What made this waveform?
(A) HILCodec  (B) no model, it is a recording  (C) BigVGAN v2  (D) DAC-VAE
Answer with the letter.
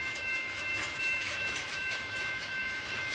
D